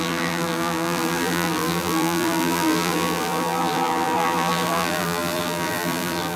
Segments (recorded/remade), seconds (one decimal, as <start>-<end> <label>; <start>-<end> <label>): 0.0-6.4 remade